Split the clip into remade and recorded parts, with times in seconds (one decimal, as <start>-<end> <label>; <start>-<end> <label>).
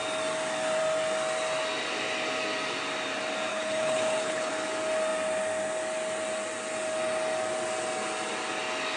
0.0-3.5 recorded; 3.5-4.5 remade; 4.5-9.0 recorded